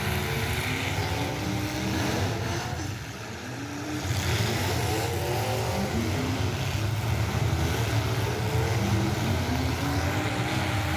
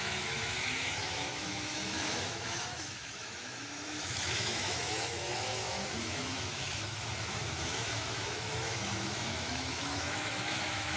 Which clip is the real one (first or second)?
first